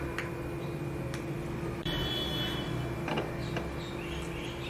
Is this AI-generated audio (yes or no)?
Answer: no